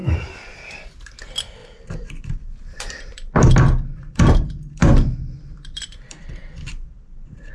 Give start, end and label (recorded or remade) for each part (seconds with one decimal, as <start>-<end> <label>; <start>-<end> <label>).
0.0-0.7 remade; 0.7-1.6 recorded; 1.6-3.5 remade; 3.5-3.9 recorded; 3.9-6.9 remade; 6.9-7.5 recorded